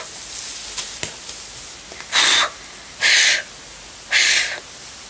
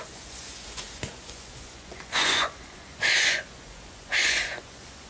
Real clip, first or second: first